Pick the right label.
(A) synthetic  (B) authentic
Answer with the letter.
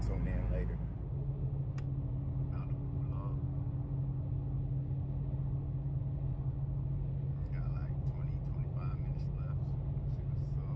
B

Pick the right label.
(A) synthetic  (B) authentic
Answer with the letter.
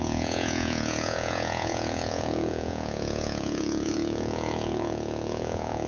A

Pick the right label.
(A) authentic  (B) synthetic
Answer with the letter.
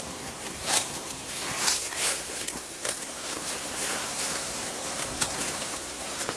B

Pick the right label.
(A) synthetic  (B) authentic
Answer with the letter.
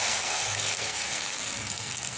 A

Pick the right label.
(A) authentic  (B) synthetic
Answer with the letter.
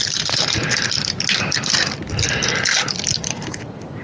A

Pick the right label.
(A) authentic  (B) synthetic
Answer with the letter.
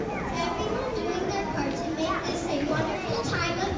A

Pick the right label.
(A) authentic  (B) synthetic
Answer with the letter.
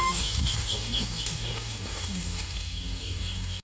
B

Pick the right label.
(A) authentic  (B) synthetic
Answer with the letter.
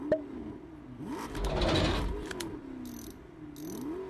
A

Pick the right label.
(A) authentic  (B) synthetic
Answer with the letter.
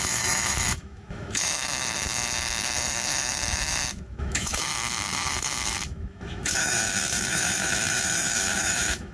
B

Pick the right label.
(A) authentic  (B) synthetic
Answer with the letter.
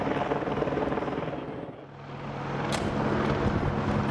A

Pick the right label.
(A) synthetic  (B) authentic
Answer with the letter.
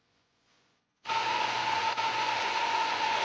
A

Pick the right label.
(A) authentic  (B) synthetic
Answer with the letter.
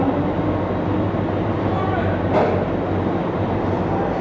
A